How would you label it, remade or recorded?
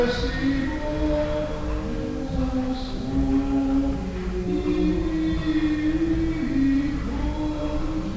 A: recorded